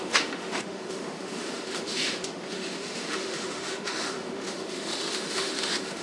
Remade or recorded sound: remade